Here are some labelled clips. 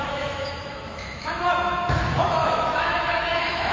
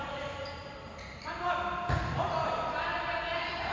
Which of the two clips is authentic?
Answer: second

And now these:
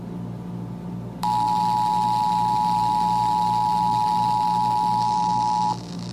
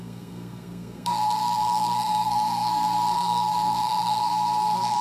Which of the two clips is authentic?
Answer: first